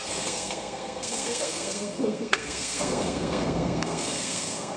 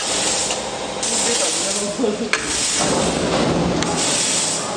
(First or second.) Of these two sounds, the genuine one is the second